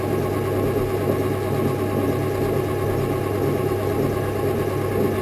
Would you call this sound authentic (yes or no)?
yes